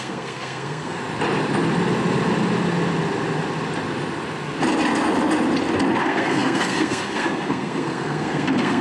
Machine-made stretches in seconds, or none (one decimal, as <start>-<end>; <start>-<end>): 0.0-1.0; 6.0-8.8